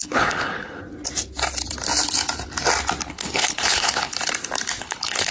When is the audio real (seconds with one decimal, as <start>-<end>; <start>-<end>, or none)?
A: 0.8-3.1; 4.1-4.8